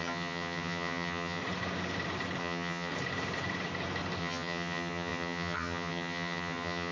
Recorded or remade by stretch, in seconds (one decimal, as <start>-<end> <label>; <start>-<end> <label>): 0.0-1.4 remade; 1.4-2.4 recorded; 2.4-2.9 remade; 2.9-4.2 recorded; 4.2-6.9 remade